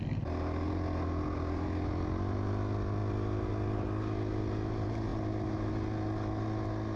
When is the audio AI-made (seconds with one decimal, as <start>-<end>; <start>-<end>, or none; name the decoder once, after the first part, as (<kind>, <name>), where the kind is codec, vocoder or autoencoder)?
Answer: none